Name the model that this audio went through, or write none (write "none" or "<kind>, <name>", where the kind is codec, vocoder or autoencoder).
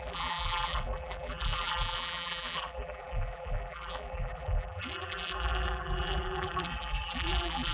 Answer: vocoder, BigVGAN v2